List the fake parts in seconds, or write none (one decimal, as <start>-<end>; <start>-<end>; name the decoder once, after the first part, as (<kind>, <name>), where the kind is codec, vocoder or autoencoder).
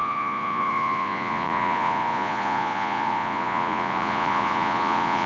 0.0-5.3 (vocoder, Vocos)